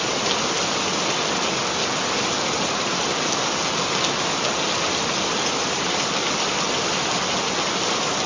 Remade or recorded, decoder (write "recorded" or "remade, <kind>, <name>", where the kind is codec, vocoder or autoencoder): recorded